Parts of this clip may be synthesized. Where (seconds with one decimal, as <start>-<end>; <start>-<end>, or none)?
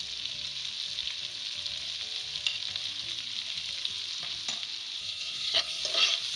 5.0-5.8